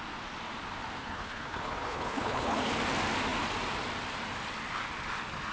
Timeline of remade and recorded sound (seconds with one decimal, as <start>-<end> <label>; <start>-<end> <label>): 0.0-1.0 recorded; 1.0-2.7 remade; 2.7-5.5 recorded